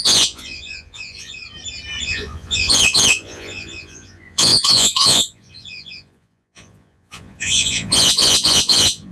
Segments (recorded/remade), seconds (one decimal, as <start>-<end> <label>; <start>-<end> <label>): 0.0-1.4 remade; 1.4-2.0 recorded; 2.0-9.1 remade